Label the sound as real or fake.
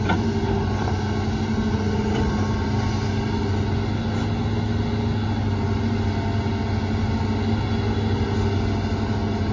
real